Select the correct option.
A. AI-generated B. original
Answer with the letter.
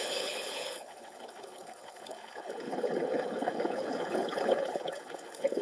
A